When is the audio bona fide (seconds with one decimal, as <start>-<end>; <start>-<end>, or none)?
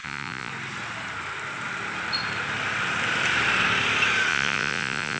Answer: 0.5-4.3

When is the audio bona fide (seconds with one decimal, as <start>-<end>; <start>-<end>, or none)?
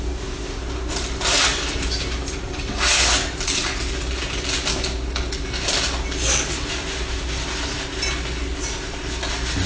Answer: 0.0-9.7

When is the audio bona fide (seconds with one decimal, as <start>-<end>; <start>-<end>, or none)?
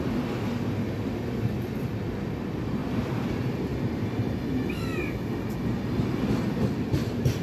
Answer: 0.0-2.8; 3.3-3.7; 4.4-7.4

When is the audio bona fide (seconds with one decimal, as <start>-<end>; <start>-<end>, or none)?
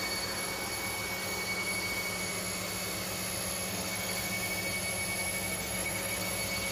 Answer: 0.0-3.7; 4.3-5.5; 6.3-6.7